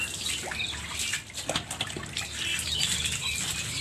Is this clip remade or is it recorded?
recorded